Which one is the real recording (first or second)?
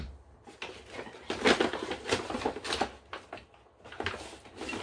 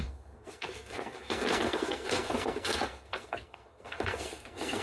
first